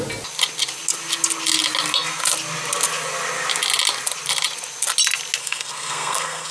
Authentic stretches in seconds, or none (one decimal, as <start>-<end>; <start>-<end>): 0.0-5.4